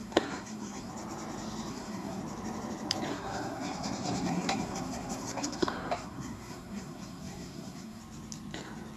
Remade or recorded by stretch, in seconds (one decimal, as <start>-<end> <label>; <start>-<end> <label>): 0.0-0.9 remade; 0.9-1.7 recorded; 1.7-2.2 remade; 2.2-3.1 recorded; 3.1-8.0 remade; 8.0-9.0 recorded